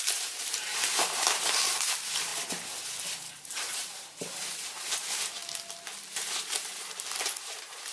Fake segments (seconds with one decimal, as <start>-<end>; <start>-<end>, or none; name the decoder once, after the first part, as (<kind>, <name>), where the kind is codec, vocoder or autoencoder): 0.0-5.4 (vocoder, BigVGAN v2); 6.0-7.9